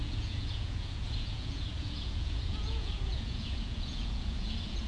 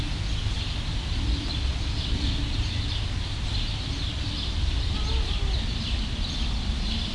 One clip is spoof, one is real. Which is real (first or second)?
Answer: second